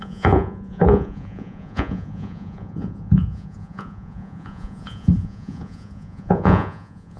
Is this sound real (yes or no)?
no